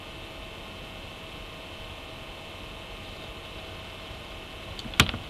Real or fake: real